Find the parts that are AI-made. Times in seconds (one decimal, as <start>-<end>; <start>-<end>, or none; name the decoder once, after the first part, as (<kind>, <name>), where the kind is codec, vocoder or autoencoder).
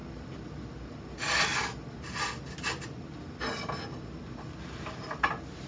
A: none